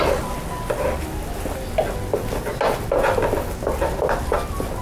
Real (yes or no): yes